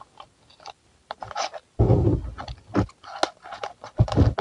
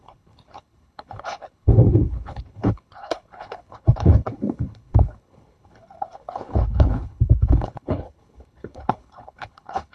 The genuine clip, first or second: first